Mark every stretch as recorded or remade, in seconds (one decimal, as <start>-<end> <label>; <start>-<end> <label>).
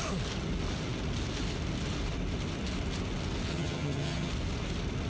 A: 0.0-3.5 recorded; 3.5-4.3 remade; 4.3-5.1 recorded